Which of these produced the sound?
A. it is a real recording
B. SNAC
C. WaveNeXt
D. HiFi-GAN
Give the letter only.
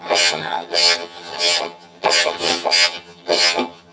D